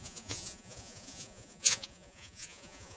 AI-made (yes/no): yes